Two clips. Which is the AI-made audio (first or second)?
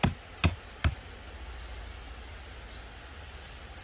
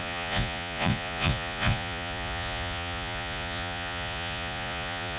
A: second